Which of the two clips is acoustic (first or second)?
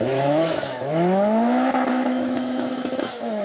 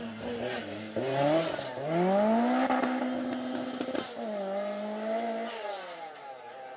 second